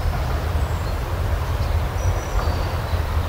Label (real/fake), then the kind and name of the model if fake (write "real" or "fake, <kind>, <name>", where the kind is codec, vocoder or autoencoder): real